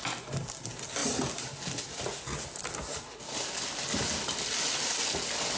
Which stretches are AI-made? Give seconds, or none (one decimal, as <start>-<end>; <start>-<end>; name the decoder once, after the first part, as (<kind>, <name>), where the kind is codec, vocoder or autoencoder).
none